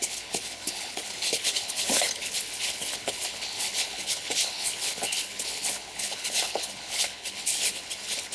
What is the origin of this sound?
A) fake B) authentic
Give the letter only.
A